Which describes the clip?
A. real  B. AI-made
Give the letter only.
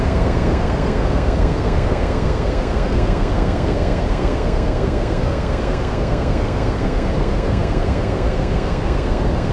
B